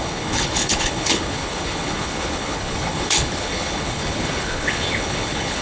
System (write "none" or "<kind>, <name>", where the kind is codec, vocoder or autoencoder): codec, HILCodec